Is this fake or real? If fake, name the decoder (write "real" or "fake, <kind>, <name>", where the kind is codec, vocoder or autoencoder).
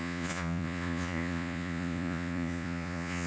fake, vocoder, Vocos